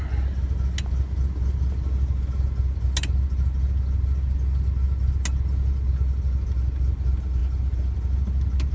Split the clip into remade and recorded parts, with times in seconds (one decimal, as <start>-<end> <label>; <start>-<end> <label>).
0.0-8.7 recorded